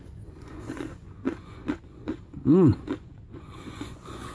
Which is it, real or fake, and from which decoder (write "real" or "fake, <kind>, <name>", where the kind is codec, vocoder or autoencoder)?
fake, vocoder, Vocos